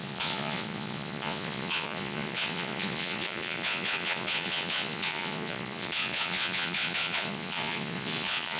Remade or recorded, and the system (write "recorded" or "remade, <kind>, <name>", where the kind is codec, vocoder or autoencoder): remade, vocoder, Vocos